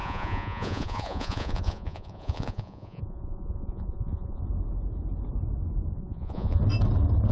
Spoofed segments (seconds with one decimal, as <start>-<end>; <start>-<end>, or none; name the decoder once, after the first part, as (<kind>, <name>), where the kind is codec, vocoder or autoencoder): 0.0-4.4 (vocoder, Vocos); 6.0-6.6